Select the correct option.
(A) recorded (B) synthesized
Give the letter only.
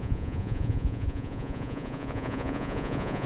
B